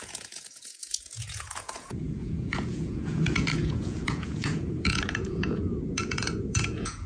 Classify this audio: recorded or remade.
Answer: remade